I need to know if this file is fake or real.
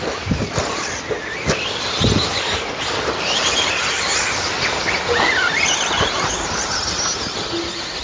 real